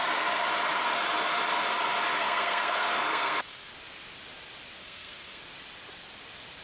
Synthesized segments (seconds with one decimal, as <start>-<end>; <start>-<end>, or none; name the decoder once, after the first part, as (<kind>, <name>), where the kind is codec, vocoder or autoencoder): 2.2-3.7 (codec, SNAC); 4.8-5.4